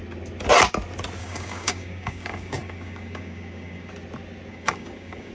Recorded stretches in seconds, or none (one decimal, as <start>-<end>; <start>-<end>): 0.0-1.2; 3.9-4.5